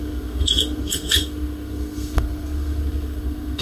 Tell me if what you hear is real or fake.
fake